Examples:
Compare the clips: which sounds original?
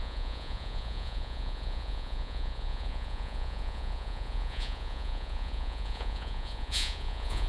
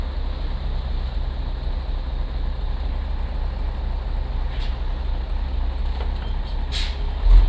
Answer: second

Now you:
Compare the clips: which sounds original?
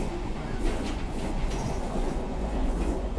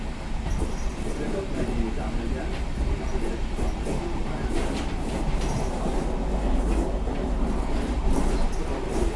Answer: second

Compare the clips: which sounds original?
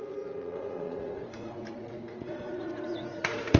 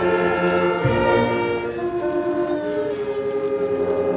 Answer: second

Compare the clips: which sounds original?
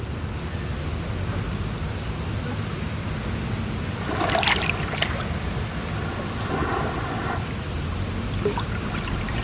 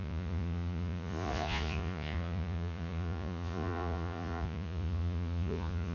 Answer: first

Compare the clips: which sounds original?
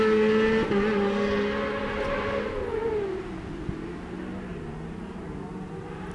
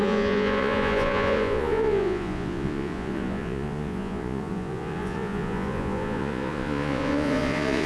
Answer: first